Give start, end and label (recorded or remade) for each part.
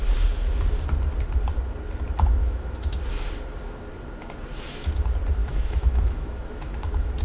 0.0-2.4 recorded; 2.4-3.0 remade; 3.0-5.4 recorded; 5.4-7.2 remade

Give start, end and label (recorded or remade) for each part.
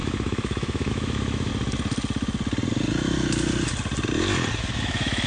0.0-1.5 remade; 1.5-4.6 recorded; 4.6-5.3 remade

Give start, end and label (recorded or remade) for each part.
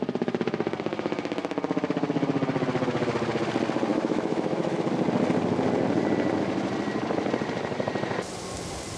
0.0-3.9 recorded; 3.9-4.8 remade; 4.8-9.0 recorded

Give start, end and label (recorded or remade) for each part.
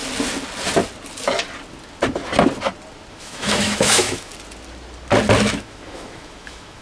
0.0-3.1 recorded; 3.1-4.3 remade; 4.3-5.5 recorded; 5.5-6.8 remade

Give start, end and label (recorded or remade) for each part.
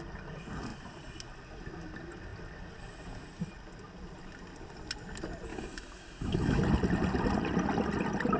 0.0-5.5 recorded; 5.5-6.6 remade; 6.6-8.4 recorded